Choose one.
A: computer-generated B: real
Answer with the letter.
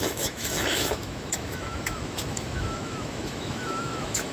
A